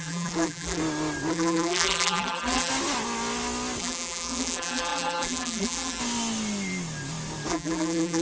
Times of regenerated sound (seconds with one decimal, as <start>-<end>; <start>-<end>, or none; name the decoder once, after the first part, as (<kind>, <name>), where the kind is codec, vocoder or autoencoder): 0.0-0.8 (vocoder, BigVGAN v2); 1.3-2.7; 3.8-6.0; 7.5-8.2